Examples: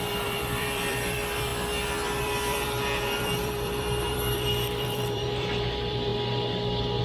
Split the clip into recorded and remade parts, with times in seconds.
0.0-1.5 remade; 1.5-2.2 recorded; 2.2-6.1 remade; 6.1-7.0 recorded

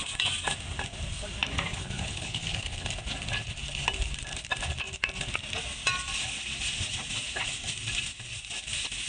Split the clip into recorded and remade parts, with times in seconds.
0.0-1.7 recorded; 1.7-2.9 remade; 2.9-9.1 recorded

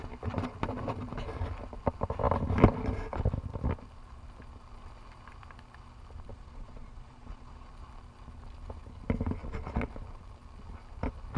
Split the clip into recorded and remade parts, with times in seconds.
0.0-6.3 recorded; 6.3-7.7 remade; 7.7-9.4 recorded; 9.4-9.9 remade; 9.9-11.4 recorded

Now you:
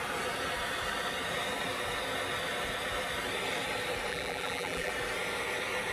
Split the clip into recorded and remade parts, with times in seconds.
0.0-4.1 recorded; 4.1-4.9 remade; 4.9-5.9 recorded

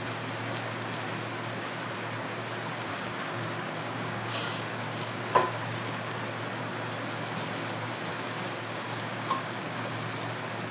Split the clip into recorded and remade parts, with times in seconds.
0.0-2.9 recorded; 2.9-6.2 remade; 6.2-8.1 recorded; 8.1-9.9 remade; 9.9-10.7 recorded

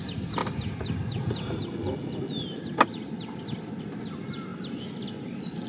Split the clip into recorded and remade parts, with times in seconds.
0.0-5.7 recorded

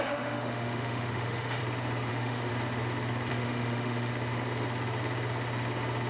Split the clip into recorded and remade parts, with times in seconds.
0.0-1.6 remade; 1.6-2.1 recorded; 2.1-2.5 remade; 2.5-3.3 recorded; 3.3-4.1 remade; 4.1-6.1 recorded